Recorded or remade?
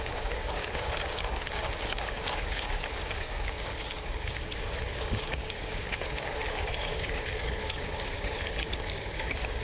remade